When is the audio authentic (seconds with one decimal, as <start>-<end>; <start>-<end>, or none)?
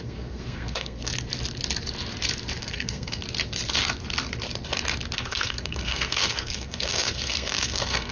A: 1.1-2.6; 3.2-5.2